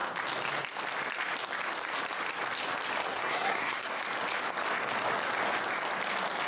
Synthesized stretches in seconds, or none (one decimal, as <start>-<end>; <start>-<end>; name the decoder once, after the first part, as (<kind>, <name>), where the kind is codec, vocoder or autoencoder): 3.1-4.0 (codec, SNAC)